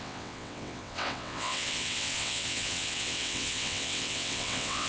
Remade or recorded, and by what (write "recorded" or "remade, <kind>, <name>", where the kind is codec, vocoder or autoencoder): remade, vocoder, WaveNeXt